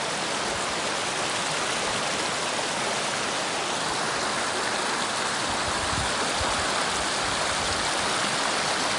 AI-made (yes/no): no